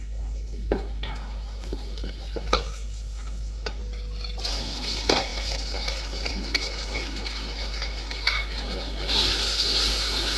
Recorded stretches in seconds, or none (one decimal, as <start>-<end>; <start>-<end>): 3.8-4.5